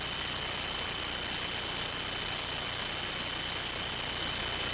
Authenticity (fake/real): real